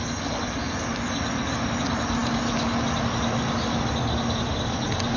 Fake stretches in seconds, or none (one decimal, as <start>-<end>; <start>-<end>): none